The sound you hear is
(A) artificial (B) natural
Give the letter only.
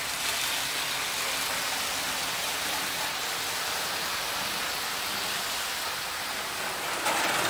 B